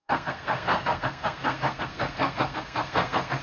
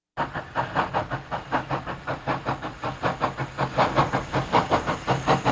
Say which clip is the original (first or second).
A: second